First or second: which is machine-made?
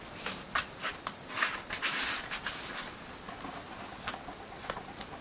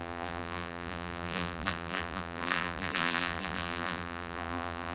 second